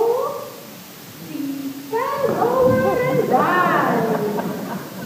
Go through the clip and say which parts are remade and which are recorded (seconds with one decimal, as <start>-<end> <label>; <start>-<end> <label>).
0.0-5.1 recorded